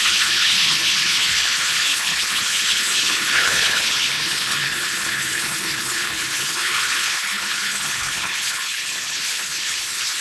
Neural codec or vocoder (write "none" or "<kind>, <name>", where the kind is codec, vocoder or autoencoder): codec, HILCodec